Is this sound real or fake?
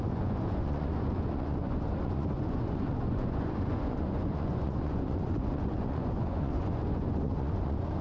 fake